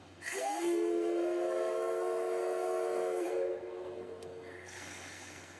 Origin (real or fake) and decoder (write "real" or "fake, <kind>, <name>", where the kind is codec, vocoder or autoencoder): fake, codec, SNAC